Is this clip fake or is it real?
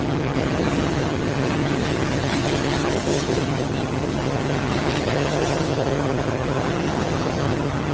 fake